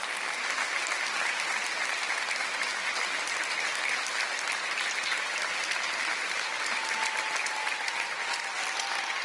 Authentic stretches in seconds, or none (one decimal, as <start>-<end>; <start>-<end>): 0.0-9.2

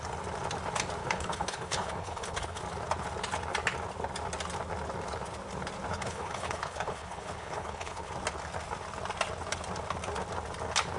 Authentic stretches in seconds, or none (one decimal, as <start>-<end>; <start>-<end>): 0.0-1.0; 2.6-5.9; 8.1-11.0

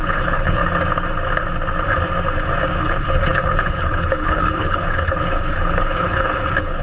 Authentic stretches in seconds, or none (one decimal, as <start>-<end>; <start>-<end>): 0.6-2.8

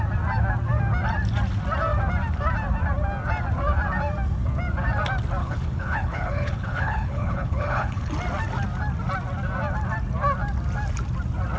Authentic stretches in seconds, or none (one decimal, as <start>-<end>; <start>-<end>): 0.0-5.4; 8.1-11.6

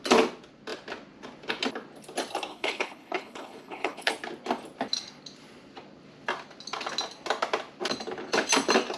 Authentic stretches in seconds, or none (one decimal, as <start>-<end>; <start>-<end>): 0.0-2.5; 4.1-9.0

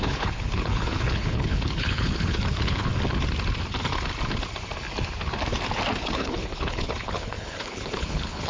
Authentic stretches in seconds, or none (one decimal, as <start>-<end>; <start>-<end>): 2.9-6.0

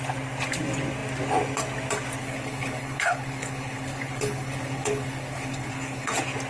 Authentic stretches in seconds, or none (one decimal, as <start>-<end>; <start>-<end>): 0.0-2.2; 6.1-6.5

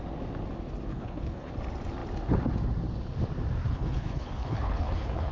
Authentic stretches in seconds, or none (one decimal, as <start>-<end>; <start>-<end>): 0.0-0.9; 1.5-3.6